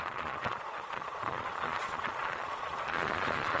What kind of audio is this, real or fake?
fake